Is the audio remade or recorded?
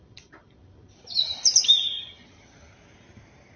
remade